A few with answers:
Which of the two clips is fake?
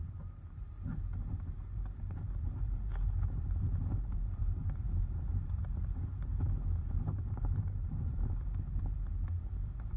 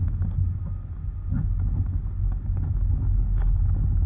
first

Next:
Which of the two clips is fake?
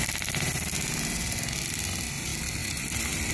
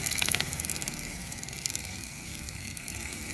second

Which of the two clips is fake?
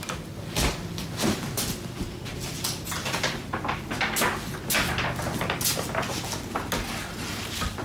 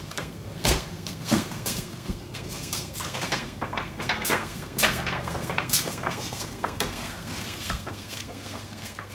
second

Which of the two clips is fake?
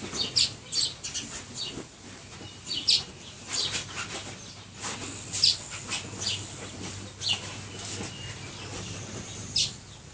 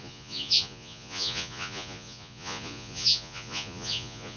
second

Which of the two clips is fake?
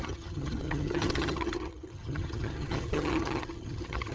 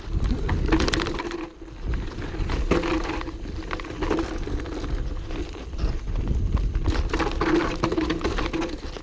first